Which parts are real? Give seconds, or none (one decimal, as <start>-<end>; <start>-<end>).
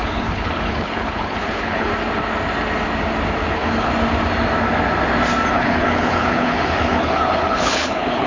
1.9-3.5; 3.9-5.5